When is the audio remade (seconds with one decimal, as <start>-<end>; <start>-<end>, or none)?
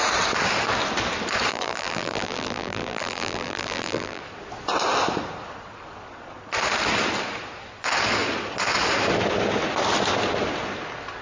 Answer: 1.5-4.2